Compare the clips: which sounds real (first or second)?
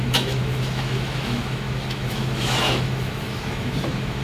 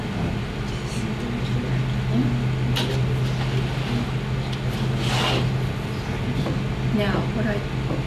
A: second